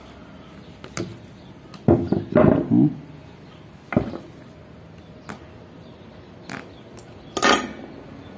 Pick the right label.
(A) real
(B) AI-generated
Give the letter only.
A